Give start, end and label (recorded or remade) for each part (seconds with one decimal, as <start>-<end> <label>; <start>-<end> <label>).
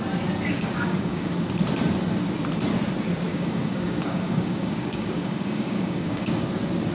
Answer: 0.0-0.5 recorded; 0.5-1.3 remade; 1.3-3.3 recorded; 3.3-6.5 remade; 6.5-6.9 recorded